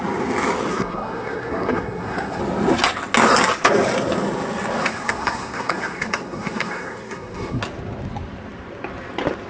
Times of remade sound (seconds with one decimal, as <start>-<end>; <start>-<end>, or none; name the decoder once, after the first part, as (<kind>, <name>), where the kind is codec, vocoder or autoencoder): 0.7-2.4 (codec, SNAC); 4.8-7.6